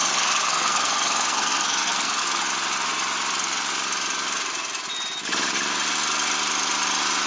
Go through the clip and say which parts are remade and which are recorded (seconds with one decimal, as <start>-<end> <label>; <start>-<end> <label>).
0.0-2.4 remade; 2.4-7.3 recorded